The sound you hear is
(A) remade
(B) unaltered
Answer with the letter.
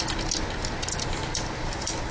B